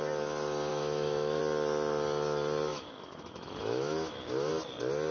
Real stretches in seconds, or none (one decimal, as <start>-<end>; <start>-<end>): 0.0-0.7; 1.4-2.7; 4.5-5.1